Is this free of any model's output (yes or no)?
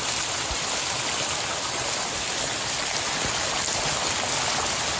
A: yes